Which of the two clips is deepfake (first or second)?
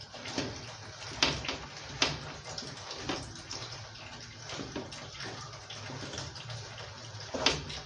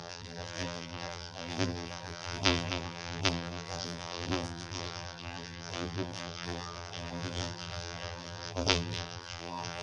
second